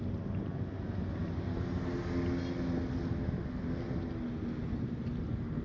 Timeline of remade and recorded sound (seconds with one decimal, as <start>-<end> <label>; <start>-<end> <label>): 0.0-5.6 recorded